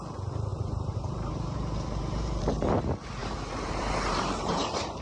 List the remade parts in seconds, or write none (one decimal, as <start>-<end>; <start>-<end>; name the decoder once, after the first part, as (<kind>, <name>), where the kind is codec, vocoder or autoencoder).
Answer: 0.5-2.4 (vocoder, BigVGAN v2); 3.2-5.0